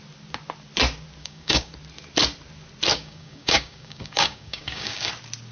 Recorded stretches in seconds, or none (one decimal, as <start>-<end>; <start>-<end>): 0.0-1.2; 1.7-2.9; 5.1-5.5